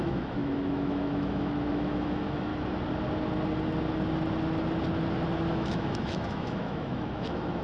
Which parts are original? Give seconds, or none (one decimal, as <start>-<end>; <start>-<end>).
2.5-5.5